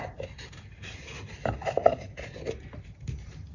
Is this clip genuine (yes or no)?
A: yes